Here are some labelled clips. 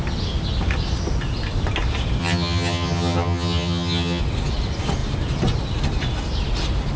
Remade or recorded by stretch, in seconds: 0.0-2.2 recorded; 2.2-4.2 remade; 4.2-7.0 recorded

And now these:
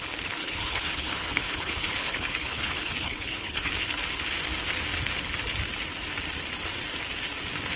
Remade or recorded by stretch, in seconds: 0.0-0.4 recorded; 0.4-3.7 remade; 3.7-7.8 recorded